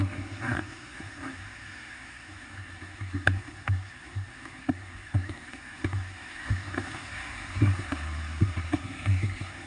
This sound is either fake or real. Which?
fake